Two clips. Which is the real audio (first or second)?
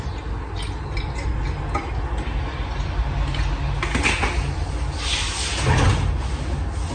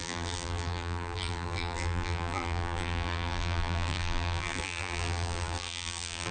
first